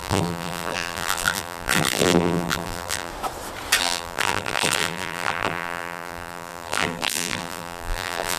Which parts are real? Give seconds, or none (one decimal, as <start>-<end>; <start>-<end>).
3.1-3.8